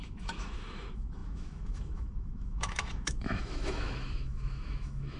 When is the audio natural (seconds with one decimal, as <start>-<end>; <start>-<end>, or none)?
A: none